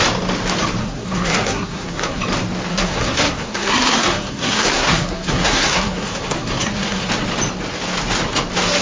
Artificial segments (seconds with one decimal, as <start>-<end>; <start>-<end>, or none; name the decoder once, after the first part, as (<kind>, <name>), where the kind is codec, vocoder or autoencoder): 0.8-2.2 (codec, SNAC); 2.7-7.1